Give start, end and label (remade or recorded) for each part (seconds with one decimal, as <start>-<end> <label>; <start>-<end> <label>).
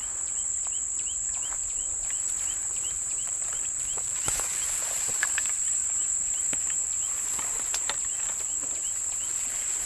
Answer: 0.0-2.6 recorded; 2.6-6.9 remade; 6.9-9.9 recorded